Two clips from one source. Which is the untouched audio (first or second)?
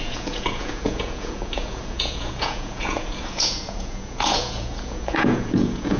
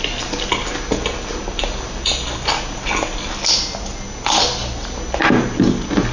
second